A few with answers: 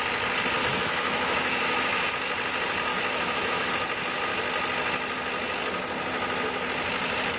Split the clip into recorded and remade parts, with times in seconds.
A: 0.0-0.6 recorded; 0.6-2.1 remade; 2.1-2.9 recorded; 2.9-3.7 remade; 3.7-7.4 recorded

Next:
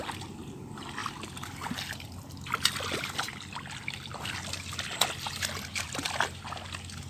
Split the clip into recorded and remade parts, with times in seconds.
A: 0.0-7.1 recorded

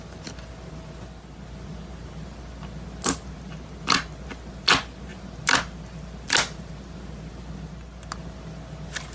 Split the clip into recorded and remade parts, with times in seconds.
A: 0.0-9.1 recorded

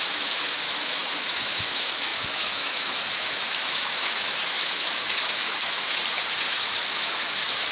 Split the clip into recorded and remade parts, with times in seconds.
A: 0.0-6.0 remade; 6.0-6.5 recorded; 6.5-7.7 remade